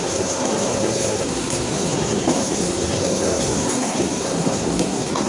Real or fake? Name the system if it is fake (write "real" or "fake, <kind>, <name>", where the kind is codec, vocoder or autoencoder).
fake, codec, SNAC